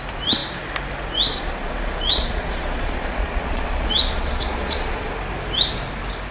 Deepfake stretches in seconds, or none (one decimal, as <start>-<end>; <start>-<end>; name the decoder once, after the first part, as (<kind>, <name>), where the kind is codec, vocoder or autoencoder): 1.3-5.1 (vocoder, Vocos)